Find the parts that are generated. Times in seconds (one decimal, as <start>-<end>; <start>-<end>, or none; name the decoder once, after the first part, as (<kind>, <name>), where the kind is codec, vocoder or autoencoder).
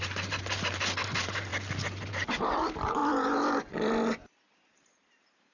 0.0-1.5 (vocoder, BigVGAN v2); 2.1-3.0; 4.7-5.5